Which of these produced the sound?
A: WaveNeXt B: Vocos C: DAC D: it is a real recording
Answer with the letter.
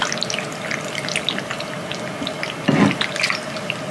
D